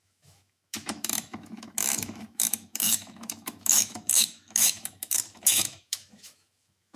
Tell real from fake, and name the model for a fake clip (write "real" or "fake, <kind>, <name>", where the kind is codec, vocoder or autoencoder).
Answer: fake, autoencoder, DAC-VAE